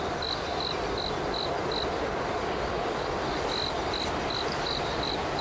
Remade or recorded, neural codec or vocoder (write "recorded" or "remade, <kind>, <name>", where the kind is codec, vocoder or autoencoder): recorded